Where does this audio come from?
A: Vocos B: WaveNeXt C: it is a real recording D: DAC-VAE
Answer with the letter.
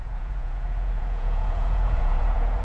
A